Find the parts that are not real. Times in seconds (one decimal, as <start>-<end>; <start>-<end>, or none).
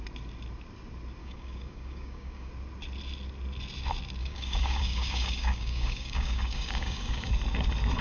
1.2-2.5; 4.2-7.3